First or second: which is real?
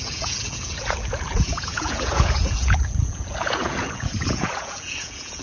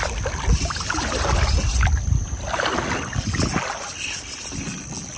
second